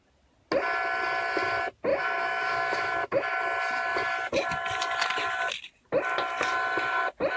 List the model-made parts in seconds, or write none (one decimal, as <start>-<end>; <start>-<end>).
1.9-3.3